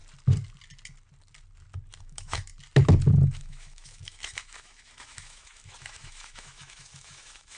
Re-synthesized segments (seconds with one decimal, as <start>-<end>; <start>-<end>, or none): 2.0-2.5; 3.4-7.6